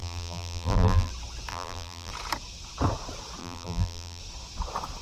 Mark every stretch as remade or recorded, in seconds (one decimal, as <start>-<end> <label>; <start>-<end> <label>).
0.0-1.1 remade; 1.1-1.5 recorded; 1.5-2.1 remade; 2.1-3.4 recorded; 3.4-4.2 remade; 4.2-5.0 recorded